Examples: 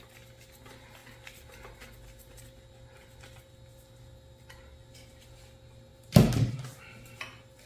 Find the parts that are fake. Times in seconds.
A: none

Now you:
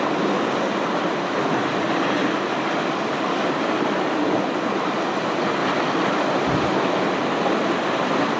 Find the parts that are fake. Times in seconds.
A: none

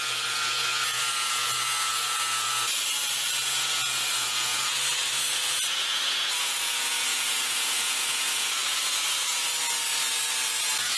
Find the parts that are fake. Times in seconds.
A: 0.0-9.5 (vocoder, Vocos)